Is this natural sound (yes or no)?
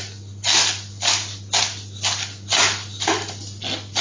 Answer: yes